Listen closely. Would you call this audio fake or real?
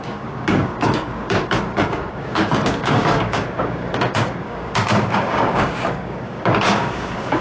fake